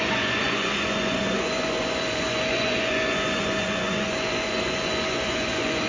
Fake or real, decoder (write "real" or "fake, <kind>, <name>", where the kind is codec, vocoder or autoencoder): fake, vocoder, Vocos